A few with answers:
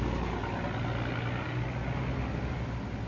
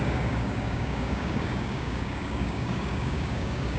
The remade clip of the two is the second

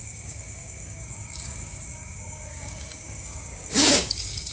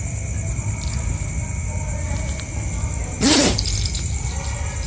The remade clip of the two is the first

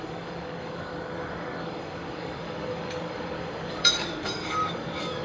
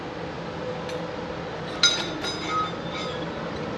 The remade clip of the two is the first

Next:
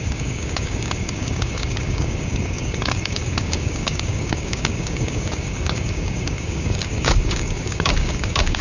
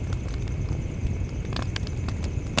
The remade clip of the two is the first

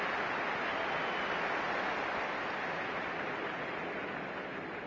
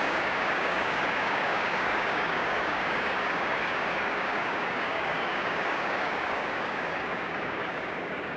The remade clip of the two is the second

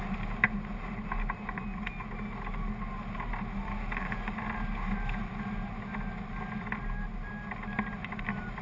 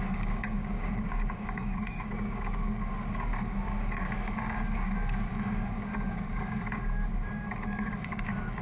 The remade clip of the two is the second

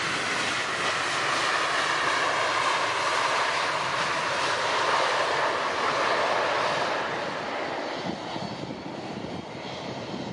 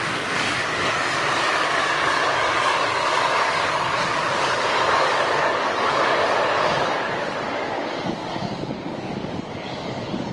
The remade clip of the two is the second